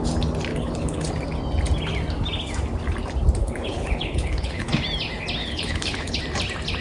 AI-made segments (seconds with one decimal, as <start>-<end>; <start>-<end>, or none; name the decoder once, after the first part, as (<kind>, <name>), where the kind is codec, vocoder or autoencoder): 0.5-1.1 (codec, HILCodec); 3.4-4.7; 5.4-6.2